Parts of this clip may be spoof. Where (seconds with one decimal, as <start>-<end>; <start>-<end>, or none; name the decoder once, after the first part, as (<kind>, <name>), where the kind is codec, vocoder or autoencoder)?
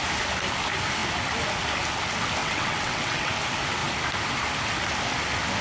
2.4-3.3 (vocoder, WaveNeXt)